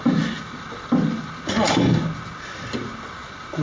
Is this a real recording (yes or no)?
yes